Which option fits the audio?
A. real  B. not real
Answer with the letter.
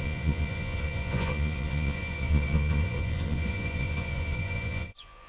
B